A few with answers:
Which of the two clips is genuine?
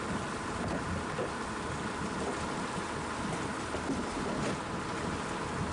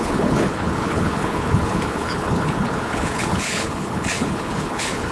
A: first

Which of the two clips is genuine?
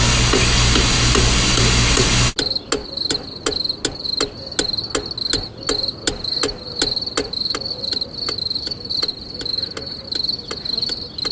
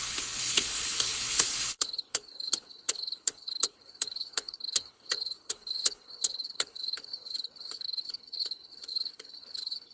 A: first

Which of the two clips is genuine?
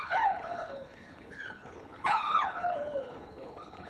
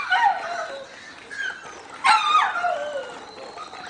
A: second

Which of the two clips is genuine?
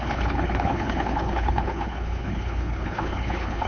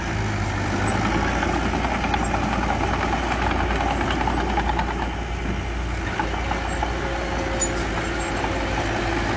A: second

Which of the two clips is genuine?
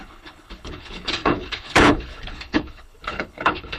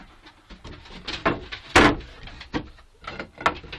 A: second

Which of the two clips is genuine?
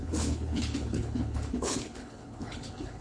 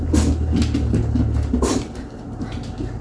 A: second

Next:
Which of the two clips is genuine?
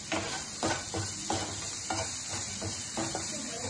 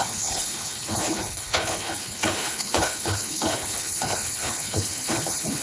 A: first